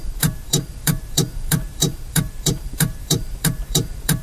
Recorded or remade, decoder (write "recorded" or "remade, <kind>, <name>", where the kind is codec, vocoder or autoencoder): remade, vocoder, BigVGAN v2